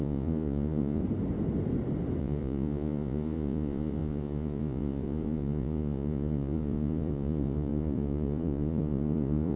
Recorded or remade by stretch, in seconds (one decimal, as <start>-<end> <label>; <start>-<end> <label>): 0.0-1.0 remade; 1.0-2.2 recorded; 2.2-9.6 remade